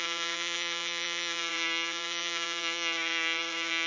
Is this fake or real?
fake